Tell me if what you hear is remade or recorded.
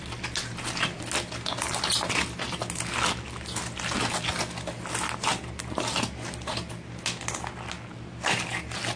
recorded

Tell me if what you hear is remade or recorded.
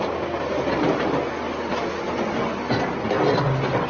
recorded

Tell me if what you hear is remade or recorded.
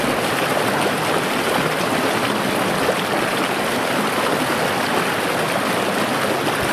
recorded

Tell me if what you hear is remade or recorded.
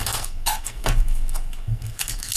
remade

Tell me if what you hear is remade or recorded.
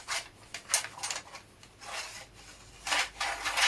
recorded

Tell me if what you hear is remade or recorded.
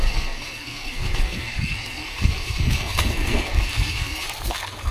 remade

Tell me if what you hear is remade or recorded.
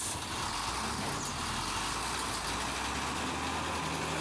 recorded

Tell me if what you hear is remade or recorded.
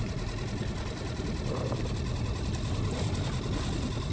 recorded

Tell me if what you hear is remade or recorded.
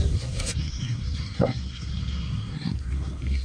remade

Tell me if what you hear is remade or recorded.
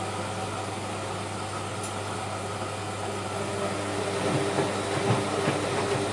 recorded